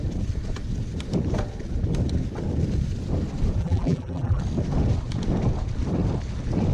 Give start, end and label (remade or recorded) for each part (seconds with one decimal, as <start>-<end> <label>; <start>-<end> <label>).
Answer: 0.0-3.6 recorded; 3.6-4.4 remade; 4.4-6.7 recorded